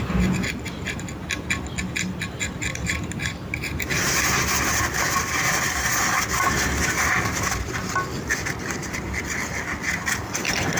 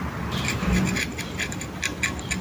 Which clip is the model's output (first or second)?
second